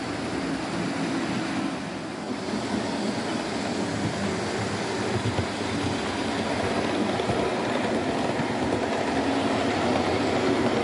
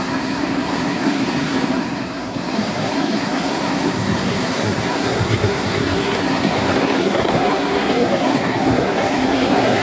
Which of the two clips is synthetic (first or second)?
second